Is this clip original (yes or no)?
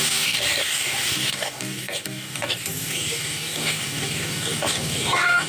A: no